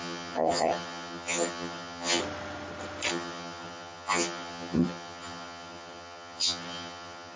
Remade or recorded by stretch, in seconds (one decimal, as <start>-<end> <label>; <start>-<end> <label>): 0.0-2.2 remade; 2.2-3.1 recorded; 3.1-7.4 remade